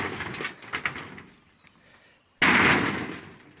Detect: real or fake real